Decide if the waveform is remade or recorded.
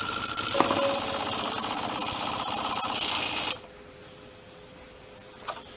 recorded